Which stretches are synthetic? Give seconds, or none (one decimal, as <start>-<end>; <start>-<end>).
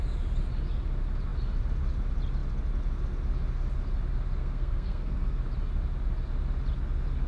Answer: 4.4-5.4